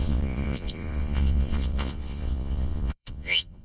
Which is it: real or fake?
fake